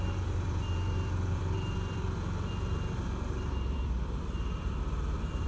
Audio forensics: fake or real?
fake